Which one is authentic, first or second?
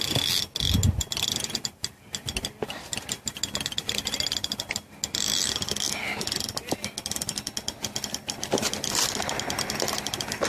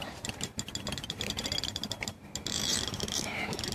first